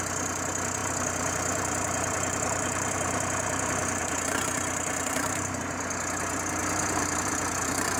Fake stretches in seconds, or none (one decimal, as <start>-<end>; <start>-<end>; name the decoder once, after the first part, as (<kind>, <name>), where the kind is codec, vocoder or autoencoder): 0.8-5.6 (vocoder, BigVGAN v2); 6.6-8.0